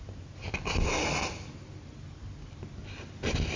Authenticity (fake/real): real